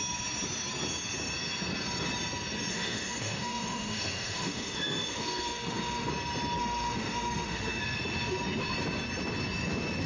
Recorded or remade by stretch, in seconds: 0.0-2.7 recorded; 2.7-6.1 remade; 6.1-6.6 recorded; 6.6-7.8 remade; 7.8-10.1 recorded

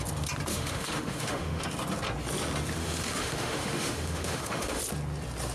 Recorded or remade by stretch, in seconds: 0.0-0.5 recorded; 0.5-1.6 remade; 1.6-2.8 recorded; 2.8-4.8 remade; 4.8-5.5 recorded

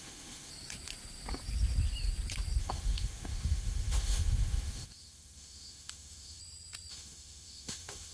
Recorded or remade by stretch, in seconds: 0.0-0.5 remade; 0.5-2.6 recorded; 2.6-6.4 remade; 6.4-6.9 recorded; 6.9-8.1 remade

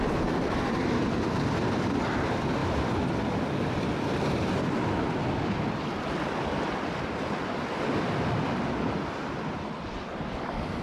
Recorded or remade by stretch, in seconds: 0.0-10.8 recorded

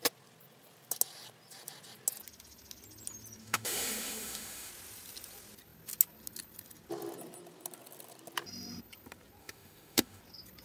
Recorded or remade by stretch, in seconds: 0.0-3.4 recorded; 3.4-4.7 remade; 4.7-9.4 recorded; 9.4-10.2 remade; 10.2-10.6 recorded

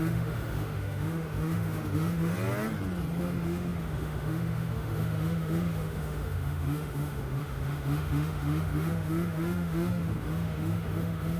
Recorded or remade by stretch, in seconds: 0.0-2.3 remade; 2.3-3.2 recorded; 3.2-11.4 remade

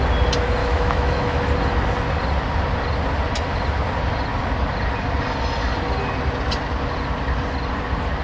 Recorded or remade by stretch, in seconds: 0.0-0.6 recorded; 0.6-1.5 remade; 1.5-8.2 recorded

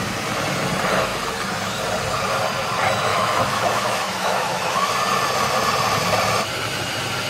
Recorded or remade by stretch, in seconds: 0.0-3.1 recorded; 3.1-4.9 remade; 4.9-7.3 recorded